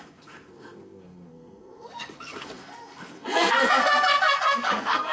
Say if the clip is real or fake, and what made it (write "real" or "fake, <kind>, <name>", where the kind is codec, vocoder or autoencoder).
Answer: fake, codec, SNAC